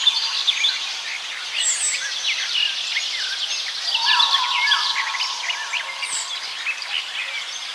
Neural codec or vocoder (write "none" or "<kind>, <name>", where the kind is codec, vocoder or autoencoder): none